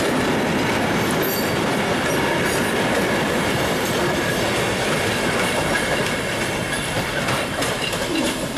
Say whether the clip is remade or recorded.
remade